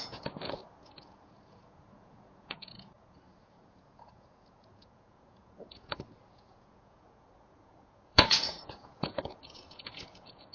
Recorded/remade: remade